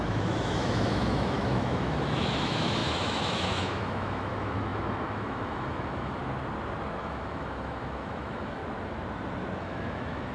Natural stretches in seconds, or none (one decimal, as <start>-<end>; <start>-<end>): 6.2-7.0; 8.6-9.6